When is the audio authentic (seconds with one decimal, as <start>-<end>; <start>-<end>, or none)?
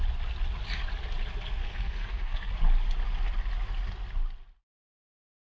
0.0-1.6; 2.5-5.5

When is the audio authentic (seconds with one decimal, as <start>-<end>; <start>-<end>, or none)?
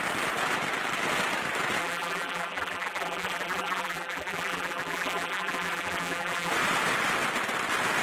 0.0-1.8; 6.5-8.0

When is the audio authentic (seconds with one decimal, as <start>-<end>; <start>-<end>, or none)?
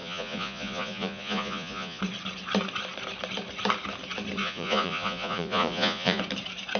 2.0-4.4; 6.2-6.8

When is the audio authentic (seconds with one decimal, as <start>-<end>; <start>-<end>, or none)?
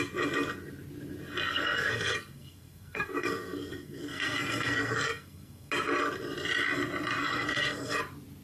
0.0-1.5; 5.7-7.2; 8.0-8.4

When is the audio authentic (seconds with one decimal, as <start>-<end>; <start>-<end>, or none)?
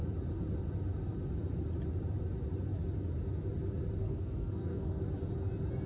0.0-4.0; 5.0-5.9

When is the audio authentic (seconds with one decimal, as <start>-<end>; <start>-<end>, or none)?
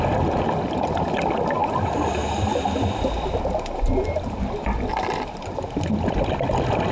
0.0-6.9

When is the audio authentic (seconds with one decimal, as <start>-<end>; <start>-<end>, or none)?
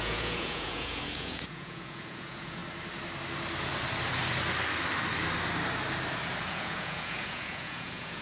2.6-6.4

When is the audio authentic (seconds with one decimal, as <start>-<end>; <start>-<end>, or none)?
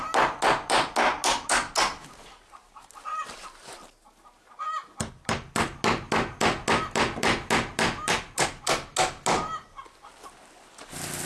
0.0-11.3